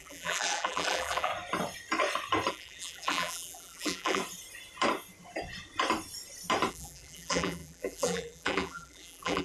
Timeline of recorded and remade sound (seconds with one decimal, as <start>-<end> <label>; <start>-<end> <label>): 0.0-1.3 remade; 1.3-2.5 recorded; 2.5-4.2 remade; 4.2-6.7 recorded; 6.7-9.4 remade